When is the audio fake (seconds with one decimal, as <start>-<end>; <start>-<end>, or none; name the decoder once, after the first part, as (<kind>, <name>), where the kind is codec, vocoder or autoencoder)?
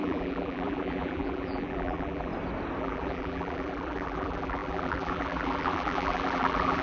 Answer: 0.0-2.3 (vocoder, BigVGAN v2); 2.8-6.8